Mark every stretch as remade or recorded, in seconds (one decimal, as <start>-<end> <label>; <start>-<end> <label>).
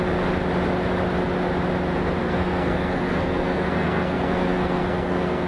0.0-2.2 recorded; 2.2-5.5 remade